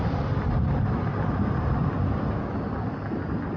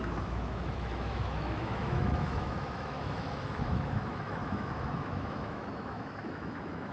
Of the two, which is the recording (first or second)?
first